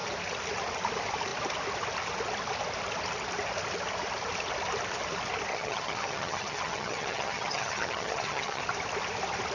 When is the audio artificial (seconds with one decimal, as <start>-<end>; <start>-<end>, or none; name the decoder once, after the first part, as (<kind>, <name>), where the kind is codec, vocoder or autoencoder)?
5.5-8.6 (vocoder, HiFi-GAN)